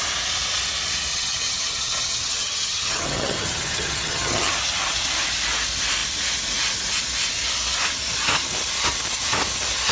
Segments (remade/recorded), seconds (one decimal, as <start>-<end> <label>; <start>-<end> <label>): 0.0-1.1 recorded; 1.1-4.5 remade; 4.5-9.9 recorded